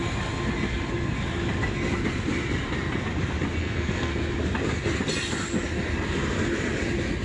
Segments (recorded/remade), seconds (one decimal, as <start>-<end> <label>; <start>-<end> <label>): 0.0-3.6 recorded; 3.6-4.1 remade; 4.1-7.2 recorded